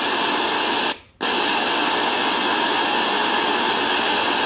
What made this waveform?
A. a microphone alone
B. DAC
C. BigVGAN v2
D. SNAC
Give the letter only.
A